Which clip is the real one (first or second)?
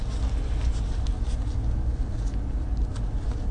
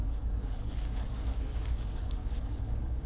first